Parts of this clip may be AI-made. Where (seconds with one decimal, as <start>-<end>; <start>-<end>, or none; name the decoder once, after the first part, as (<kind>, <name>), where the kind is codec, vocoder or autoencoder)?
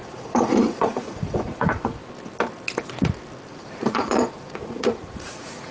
0.0-2.0 (vocoder, Vocos); 3.5-5.7